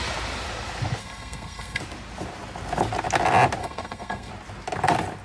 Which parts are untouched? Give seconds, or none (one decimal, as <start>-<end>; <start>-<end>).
0.0-1.0; 1.8-3.6; 4.3-5.2